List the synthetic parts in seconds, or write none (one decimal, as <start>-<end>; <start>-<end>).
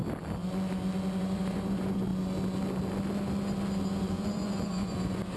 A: 1.2-2.1; 4.1-5.4